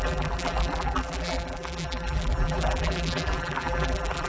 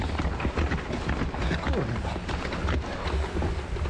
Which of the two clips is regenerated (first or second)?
first